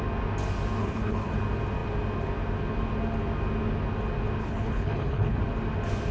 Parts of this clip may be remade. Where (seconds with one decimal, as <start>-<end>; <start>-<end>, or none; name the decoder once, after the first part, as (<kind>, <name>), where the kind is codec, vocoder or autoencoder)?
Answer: 0.8-1.3 (codec, HILCodec); 4.4-5.4